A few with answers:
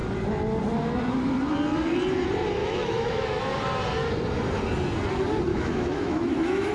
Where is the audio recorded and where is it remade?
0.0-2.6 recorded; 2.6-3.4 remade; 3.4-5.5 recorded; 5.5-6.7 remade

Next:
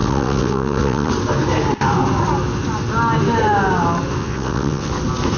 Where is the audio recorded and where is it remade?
0.0-1.1 remade; 1.1-4.2 recorded; 4.2-4.9 remade; 4.9-5.4 recorded

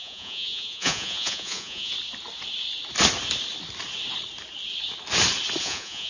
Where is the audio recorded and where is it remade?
0.0-1.9 remade; 1.9-5.6 recorded; 5.6-6.1 remade

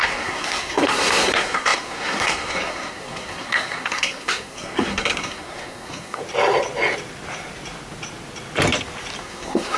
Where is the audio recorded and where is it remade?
0.0-6.2 remade; 6.2-9.2 recorded; 9.2-9.8 remade

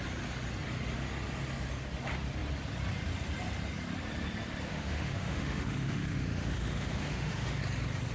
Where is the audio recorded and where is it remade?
0.0-4.7 recorded; 4.7-7.6 remade; 7.6-8.1 recorded

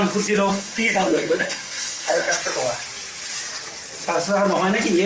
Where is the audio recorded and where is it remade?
0.0-0.5 recorded; 0.5-2.3 remade; 2.3-5.1 recorded